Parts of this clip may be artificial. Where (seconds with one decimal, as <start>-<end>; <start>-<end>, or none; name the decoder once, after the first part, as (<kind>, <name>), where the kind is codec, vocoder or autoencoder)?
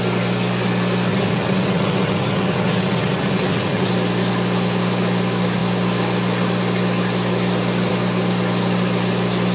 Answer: 1.1-3.9 (vocoder, WaveNeXt)